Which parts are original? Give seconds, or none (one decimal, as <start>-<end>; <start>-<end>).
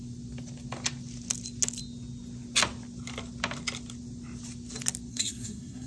0.0-5.1